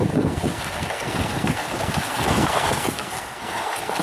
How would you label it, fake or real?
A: fake